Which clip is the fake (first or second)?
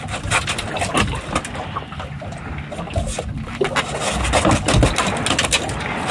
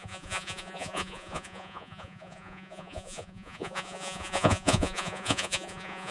second